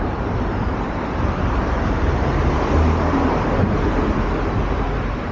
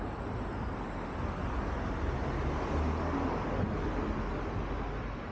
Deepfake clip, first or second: first